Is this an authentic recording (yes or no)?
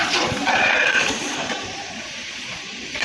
no